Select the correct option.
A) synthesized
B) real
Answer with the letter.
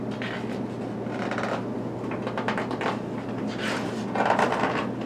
B